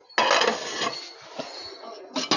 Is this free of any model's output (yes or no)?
yes